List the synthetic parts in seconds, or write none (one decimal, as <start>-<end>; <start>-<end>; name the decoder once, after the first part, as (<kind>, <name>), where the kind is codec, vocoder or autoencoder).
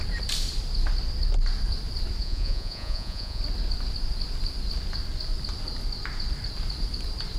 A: 2.2-3.4 (vocoder, Vocos)